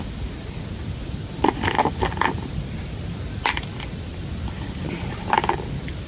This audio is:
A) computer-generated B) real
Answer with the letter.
B